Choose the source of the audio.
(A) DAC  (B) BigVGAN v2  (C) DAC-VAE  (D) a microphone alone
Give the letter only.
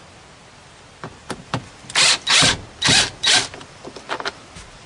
B